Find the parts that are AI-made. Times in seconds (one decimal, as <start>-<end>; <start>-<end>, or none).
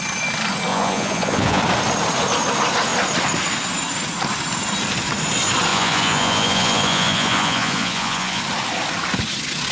0.7-1.6; 5.7-8.4